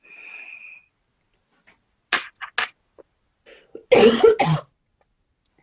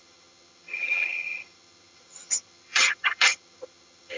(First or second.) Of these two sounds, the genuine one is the first